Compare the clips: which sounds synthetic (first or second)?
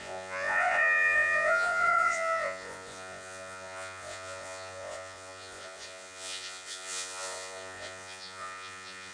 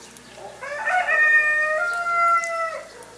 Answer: first